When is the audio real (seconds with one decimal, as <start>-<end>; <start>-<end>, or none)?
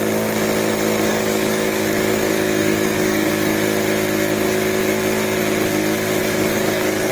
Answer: 0.0-1.1; 3.3-6.2